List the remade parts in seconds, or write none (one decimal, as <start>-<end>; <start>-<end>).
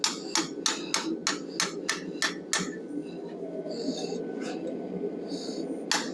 none